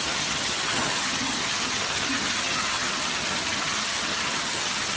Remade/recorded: remade